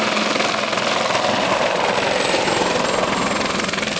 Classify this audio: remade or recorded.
recorded